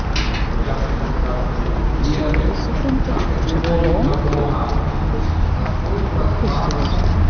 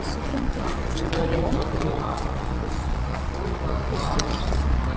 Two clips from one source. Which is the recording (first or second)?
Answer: first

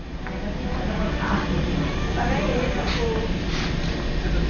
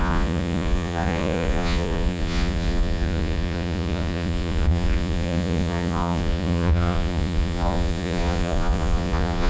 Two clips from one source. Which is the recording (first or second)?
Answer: first